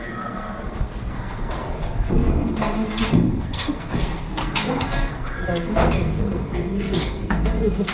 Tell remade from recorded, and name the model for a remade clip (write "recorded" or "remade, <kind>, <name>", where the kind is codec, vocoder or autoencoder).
remade, codec, SNAC